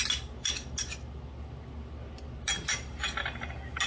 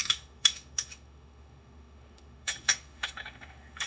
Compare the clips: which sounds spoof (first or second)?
second